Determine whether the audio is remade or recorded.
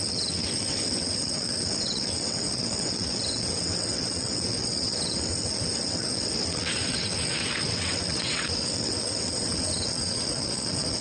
remade